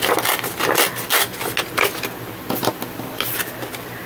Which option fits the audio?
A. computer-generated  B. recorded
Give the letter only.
B